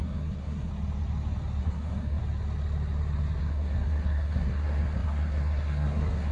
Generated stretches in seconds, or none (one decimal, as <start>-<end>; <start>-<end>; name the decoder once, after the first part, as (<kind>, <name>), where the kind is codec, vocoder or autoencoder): 0.0-0.7 (codec, SNAC); 1.6-2.2; 3.4-6.3